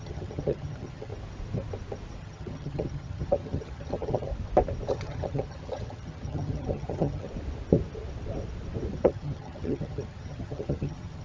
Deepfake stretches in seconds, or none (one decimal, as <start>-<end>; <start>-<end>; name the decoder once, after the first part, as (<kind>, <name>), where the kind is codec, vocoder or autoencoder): 0.0-1.1 (vocoder, HiFi-GAN); 2.2-4.3; 4.9-7.3; 8.9-11.2